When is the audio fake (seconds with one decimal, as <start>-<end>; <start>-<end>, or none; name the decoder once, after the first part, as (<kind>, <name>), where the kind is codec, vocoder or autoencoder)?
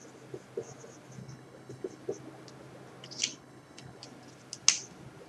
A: 1.2-2.0 (codec, HILCodec); 3.3-4.0